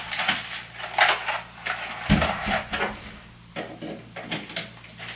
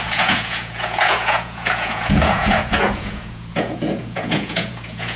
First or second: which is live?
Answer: first